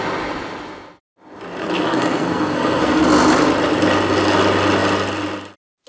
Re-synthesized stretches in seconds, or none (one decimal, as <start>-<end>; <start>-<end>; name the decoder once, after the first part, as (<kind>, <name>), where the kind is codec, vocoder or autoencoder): 1.6-3.0 (codec, SNAC)